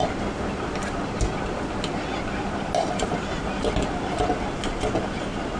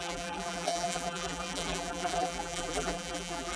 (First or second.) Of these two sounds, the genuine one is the first